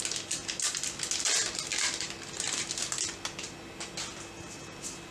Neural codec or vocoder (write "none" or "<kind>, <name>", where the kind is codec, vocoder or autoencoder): none